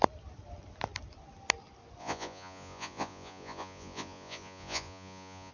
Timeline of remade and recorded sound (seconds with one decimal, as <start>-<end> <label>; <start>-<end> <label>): 0.0-2.0 recorded; 2.0-5.5 remade